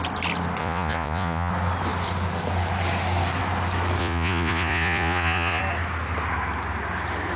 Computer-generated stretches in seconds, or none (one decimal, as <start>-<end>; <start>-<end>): 0.6-1.5; 4.0-5.6